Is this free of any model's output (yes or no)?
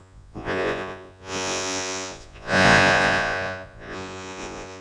no